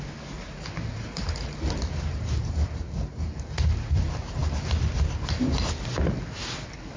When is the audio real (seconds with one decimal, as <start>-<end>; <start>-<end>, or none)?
0.0-7.0